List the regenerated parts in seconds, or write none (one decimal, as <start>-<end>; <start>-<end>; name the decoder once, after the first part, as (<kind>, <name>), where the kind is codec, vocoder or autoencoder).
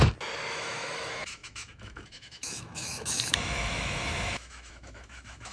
0.5-5.5 (autoencoder, DAC-VAE)